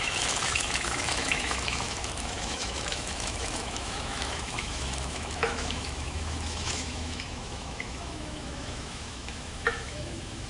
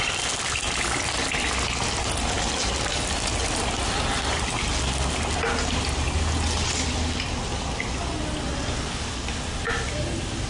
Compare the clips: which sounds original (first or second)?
second